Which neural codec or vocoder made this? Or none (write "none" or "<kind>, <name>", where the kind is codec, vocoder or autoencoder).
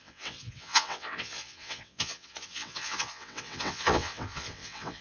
vocoder, WaveNeXt